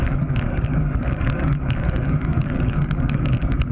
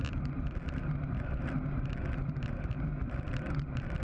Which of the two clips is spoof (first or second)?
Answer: first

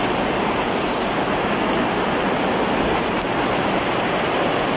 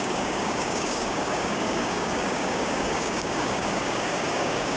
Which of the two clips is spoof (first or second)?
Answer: second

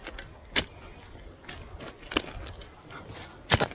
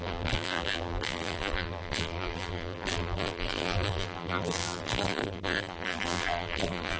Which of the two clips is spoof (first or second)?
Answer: second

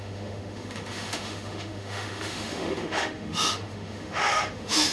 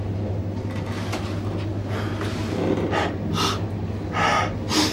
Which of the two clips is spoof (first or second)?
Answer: first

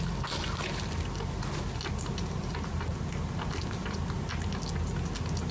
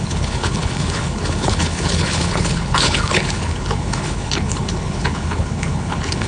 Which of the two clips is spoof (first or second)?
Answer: second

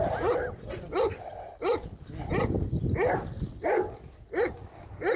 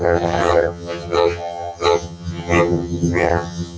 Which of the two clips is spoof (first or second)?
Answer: second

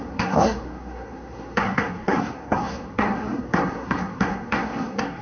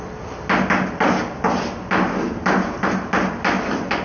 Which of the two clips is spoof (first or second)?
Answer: first